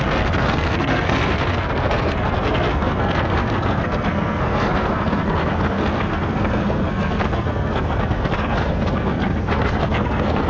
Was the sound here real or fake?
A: fake